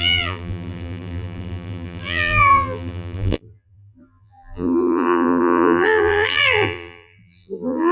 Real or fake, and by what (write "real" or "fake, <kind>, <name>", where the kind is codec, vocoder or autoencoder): fake, vocoder, BigVGAN v2